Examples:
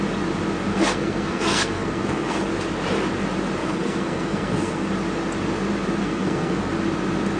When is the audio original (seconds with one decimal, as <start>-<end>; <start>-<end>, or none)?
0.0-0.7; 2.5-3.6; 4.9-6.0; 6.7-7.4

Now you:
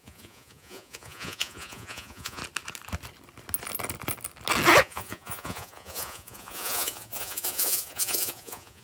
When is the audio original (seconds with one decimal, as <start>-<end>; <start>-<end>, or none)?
2.4-4.8

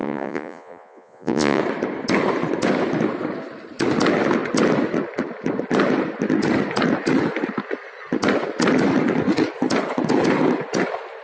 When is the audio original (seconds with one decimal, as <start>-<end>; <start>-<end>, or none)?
1.6-11.2

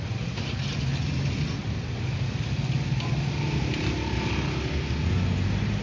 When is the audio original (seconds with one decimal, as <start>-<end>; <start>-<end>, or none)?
0.0-5.8

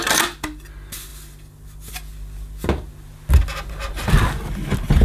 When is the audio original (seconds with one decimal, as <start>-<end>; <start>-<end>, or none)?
0.0-5.0

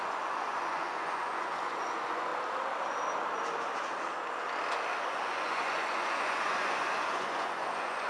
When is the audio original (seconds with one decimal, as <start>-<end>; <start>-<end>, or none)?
2.3-5.1

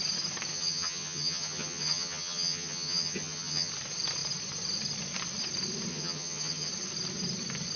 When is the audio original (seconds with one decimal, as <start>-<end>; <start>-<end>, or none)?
0.0-0.5; 3.7-5.9; 6.7-7.8

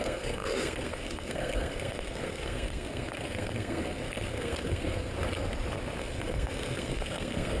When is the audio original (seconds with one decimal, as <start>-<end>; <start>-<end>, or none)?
5.1-6.0